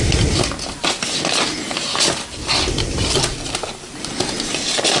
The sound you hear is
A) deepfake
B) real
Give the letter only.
B